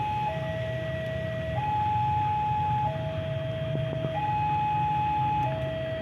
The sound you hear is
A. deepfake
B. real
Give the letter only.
B